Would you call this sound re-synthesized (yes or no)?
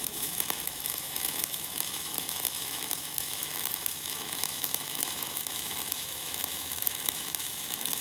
yes